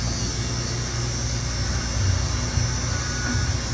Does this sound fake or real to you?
real